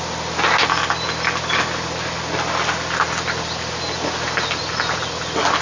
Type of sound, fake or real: real